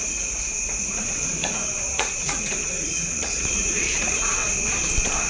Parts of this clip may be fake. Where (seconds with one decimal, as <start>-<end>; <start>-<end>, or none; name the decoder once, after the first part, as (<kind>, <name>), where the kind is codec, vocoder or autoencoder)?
0.0-4.4 (vocoder, Vocos)